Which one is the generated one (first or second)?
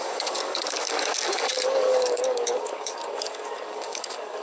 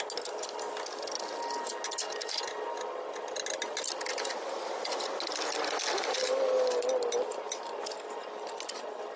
first